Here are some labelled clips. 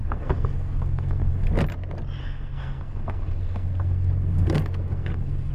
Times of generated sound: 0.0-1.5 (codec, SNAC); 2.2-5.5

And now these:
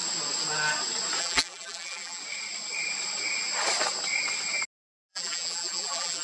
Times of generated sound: 1.2-2.2 (vocoder, BigVGAN v2); 5.1-6.2

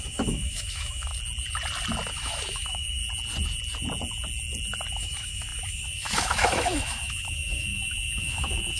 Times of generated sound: 0.0-1.1 (autoencoder, DAC-VAE); 2.1-3.0; 4.9-8.8

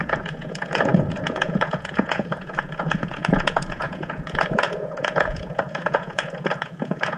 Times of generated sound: 0.0-7.2 (vocoder, Vocos)